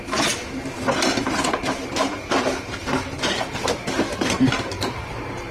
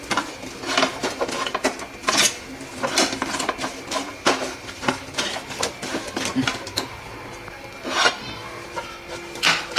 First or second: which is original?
second